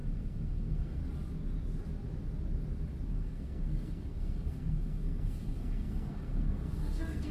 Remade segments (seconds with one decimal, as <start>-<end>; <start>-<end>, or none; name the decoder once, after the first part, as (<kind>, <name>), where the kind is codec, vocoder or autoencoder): 0.0-1.0 (codec, SNAC); 3.1-7.3